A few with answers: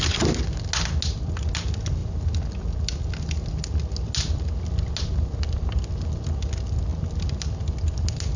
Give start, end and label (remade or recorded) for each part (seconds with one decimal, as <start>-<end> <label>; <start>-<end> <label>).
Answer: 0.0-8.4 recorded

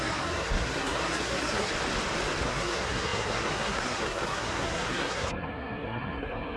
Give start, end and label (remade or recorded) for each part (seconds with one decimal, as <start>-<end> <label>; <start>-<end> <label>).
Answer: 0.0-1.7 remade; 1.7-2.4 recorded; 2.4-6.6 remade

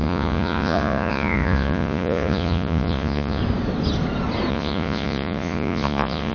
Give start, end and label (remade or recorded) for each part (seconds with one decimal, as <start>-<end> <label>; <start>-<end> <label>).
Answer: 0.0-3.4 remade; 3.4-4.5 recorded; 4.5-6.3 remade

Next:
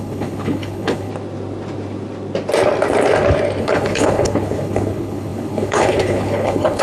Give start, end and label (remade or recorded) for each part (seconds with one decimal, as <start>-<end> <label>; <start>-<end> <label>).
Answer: 0.0-1.1 remade; 1.1-3.6 recorded; 3.6-6.8 remade

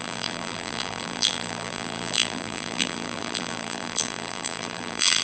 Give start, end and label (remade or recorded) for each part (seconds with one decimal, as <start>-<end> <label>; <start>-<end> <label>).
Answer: 0.0-5.2 remade

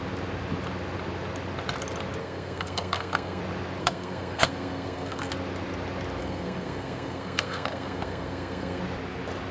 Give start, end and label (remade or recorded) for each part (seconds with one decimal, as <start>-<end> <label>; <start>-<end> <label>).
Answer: 0.0-2.2 recorded; 2.2-3.4 remade; 3.4-3.8 recorded; 3.8-5.3 remade; 5.3-6.2 recorded; 6.2-8.8 remade; 8.8-9.5 recorded

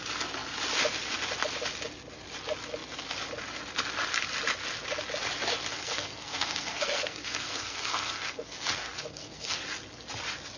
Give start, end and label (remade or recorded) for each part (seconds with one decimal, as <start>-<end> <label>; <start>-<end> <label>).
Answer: 0.0-5.7 recorded; 5.7-9.6 remade; 9.6-10.6 recorded